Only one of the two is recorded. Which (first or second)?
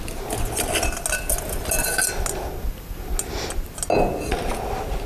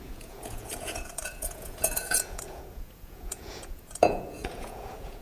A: first